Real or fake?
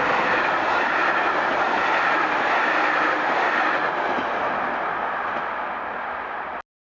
real